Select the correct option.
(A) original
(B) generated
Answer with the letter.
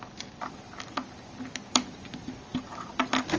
B